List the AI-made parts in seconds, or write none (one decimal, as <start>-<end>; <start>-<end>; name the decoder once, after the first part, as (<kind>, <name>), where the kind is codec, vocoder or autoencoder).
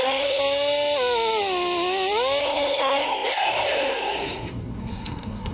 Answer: 0.0-0.4 (codec, SNAC); 2.4-5.5